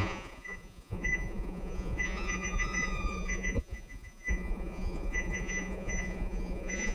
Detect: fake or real fake